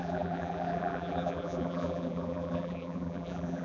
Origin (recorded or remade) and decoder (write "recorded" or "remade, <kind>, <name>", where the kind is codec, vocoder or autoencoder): remade, vocoder, BigVGAN v2